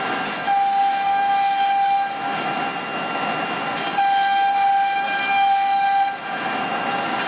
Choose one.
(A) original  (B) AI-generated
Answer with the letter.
A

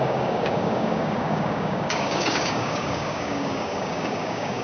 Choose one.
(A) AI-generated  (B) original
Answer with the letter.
A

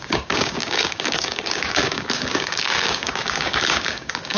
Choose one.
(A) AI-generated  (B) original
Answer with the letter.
A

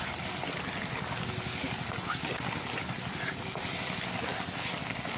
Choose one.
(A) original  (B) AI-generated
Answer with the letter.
A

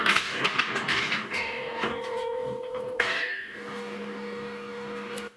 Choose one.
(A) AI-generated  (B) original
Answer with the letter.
A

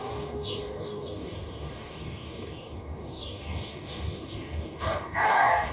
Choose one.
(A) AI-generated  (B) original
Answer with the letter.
A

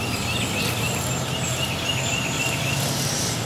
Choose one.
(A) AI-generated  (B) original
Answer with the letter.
B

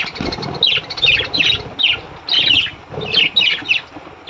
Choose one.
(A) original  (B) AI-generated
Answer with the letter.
A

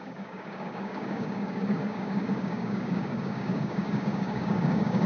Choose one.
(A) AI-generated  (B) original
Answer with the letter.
A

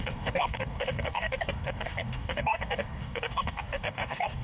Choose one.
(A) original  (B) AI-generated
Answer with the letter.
B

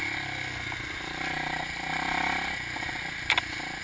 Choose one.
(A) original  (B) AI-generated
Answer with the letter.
A